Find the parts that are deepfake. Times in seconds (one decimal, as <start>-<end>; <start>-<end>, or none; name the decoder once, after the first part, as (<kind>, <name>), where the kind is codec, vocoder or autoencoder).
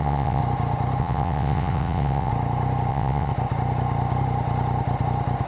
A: 0.0-0.4 (vocoder, WaveNeXt); 1.0-2.3; 2.9-3.3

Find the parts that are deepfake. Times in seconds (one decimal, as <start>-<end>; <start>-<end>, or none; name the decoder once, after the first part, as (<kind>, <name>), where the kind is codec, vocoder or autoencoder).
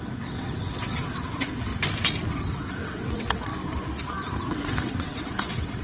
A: 0.0-1.7 (vocoder, WaveNeXt); 2.3-3.5; 4.4-5.8